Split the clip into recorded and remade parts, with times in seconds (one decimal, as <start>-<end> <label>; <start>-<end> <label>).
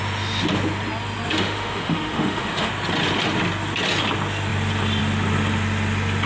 0.0-1.3 recorded; 1.3-2.7 remade; 2.7-6.3 recorded